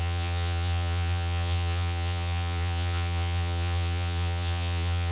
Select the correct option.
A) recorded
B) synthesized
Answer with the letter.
B